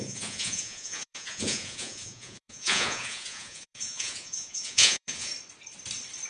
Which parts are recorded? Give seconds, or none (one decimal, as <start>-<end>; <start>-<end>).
5.3-6.3